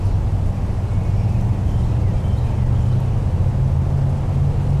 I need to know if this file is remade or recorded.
recorded